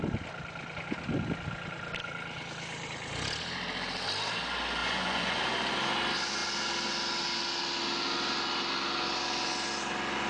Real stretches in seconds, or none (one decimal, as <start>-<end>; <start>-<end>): 0.0-4.8; 5.4-10.3